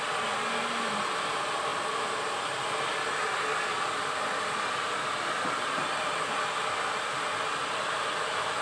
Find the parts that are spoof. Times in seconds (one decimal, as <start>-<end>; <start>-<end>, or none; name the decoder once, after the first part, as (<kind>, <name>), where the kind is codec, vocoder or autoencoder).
none